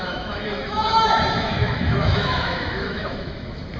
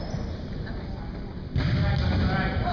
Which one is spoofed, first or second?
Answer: first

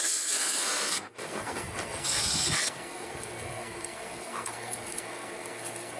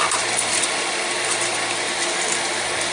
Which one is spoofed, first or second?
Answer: first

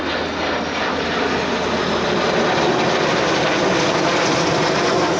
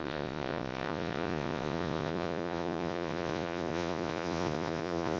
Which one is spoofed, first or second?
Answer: second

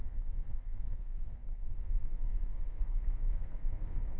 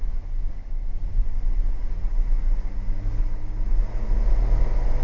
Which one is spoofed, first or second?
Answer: first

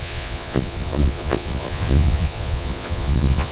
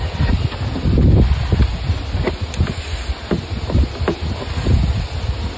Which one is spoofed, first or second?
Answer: first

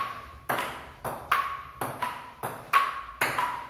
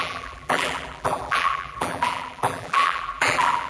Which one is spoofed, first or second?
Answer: second